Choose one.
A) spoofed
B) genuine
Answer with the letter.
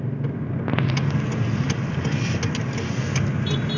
B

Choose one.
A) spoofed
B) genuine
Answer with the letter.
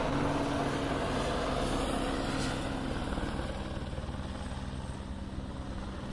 B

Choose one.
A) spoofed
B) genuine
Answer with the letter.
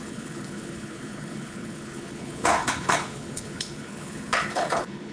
A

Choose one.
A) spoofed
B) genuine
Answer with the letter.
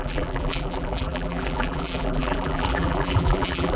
A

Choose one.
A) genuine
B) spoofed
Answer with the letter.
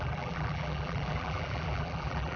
B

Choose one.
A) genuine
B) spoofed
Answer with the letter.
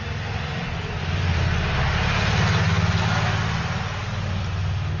A